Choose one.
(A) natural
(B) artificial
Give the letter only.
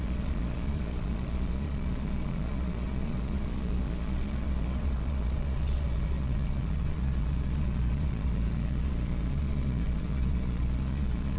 B